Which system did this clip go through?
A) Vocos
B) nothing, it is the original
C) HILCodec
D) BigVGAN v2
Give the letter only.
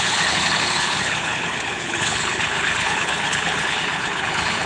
C